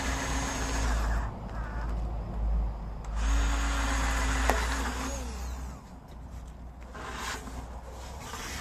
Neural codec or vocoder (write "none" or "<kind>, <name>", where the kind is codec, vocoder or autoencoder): none